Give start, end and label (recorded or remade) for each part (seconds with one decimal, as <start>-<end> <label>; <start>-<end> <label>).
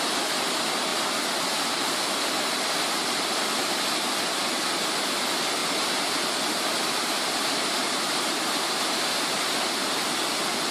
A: 0.0-5.6 recorded; 5.6-9.6 remade; 9.6-10.7 recorded